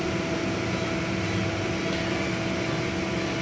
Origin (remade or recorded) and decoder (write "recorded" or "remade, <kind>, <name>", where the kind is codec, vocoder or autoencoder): recorded